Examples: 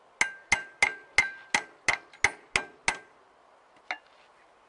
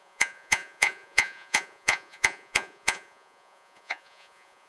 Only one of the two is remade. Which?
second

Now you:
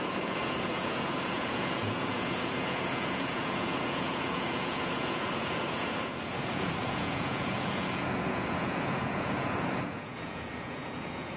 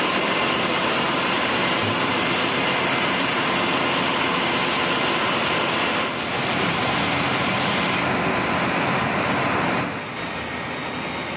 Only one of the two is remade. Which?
first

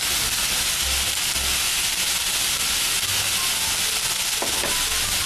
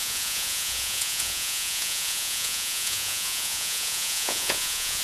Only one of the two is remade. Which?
second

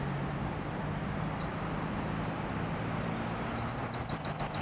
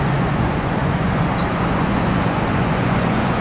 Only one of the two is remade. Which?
second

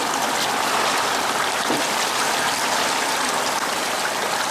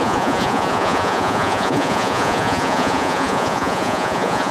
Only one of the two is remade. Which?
second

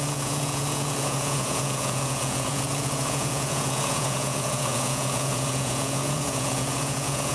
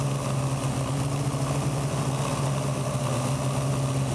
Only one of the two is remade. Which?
first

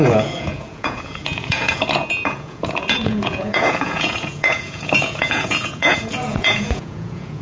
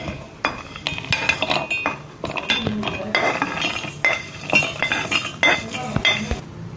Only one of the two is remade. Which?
first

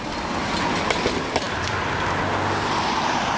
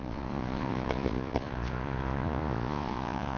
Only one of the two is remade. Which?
second